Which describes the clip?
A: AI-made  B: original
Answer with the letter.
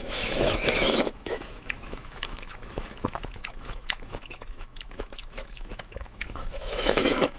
A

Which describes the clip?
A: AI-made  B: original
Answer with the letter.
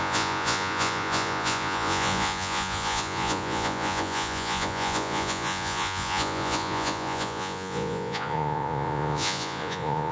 A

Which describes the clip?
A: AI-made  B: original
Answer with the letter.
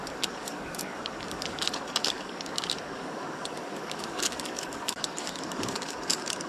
A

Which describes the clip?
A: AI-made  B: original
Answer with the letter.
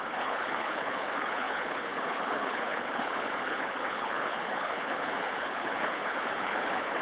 A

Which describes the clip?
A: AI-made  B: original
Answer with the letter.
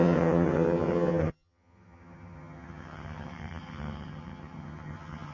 A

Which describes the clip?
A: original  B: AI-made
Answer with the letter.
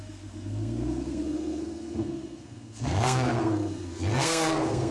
B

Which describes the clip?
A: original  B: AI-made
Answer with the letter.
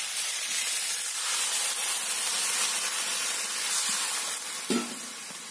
A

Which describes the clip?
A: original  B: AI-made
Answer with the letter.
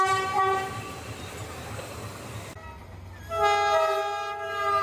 A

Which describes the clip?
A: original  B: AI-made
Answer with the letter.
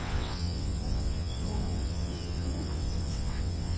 B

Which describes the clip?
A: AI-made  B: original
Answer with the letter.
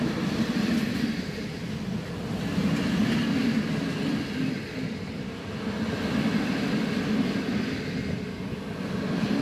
B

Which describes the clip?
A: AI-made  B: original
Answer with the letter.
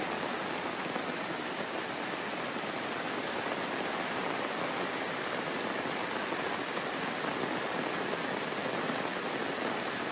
B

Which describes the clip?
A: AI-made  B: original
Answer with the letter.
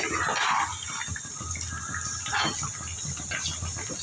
B